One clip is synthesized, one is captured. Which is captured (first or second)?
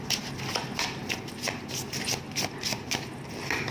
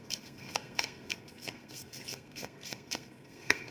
first